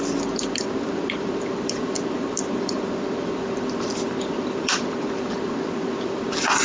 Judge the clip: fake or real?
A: fake